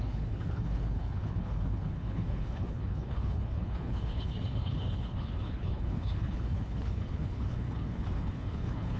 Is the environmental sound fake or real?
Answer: fake